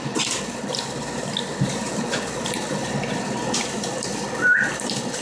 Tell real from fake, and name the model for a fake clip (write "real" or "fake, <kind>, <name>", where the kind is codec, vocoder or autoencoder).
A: real